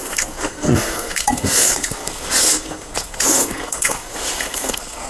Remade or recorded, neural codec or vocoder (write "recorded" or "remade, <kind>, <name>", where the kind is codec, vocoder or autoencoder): remade, codec, SNAC